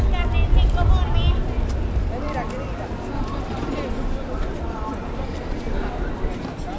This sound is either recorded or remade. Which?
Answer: recorded